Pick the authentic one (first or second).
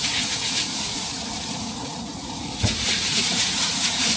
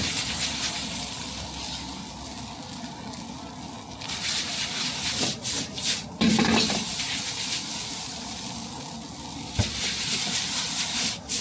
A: second